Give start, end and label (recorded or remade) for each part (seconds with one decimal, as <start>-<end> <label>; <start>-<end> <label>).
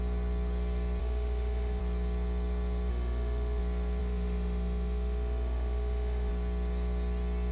0.0-1.0 recorded; 1.0-1.8 remade; 1.8-2.9 recorded; 2.9-3.6 remade; 3.6-4.0 recorded; 4.0-6.3 remade; 6.3-7.5 recorded